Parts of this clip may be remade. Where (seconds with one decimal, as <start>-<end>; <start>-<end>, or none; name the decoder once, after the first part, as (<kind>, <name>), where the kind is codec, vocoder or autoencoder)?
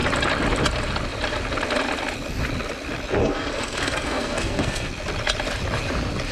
3.2-4.9 (codec, SNAC)